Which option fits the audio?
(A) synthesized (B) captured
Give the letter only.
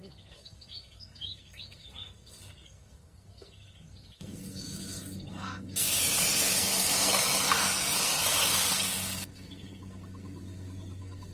A